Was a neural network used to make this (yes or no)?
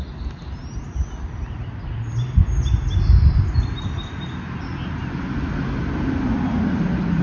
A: no